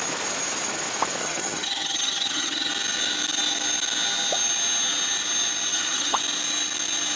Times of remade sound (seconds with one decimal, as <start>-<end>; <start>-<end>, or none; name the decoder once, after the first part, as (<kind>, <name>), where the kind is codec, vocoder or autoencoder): 1.2-2.7 (vocoder, HiFi-GAN); 5.7-6.2